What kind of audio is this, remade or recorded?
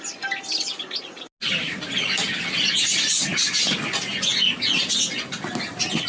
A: recorded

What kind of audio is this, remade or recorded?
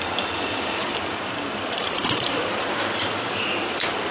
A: remade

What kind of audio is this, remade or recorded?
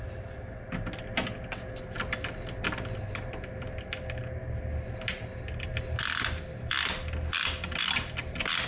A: recorded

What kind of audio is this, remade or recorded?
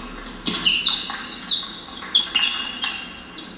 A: recorded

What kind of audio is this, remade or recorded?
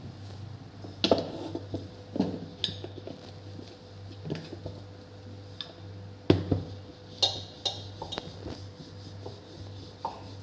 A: recorded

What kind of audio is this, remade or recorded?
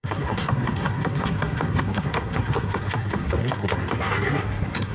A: remade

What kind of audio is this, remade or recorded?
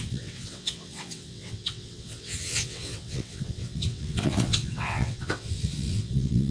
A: remade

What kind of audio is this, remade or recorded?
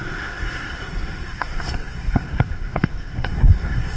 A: remade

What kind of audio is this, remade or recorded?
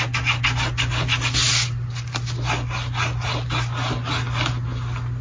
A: recorded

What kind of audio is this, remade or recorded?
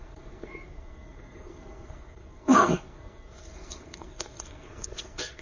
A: remade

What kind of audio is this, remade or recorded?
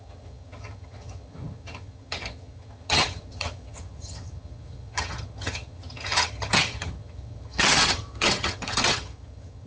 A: remade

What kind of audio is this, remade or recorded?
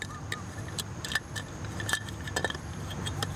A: remade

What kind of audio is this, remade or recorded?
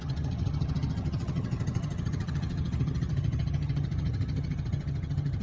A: remade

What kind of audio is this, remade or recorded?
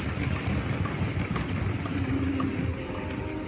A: recorded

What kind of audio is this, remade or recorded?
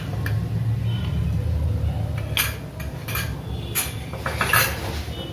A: recorded